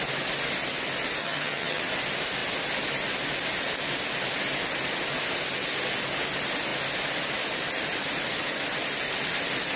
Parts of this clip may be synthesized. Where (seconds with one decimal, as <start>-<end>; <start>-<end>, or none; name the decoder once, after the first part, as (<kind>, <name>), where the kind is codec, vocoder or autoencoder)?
1.2-1.8 (vocoder, HiFi-GAN)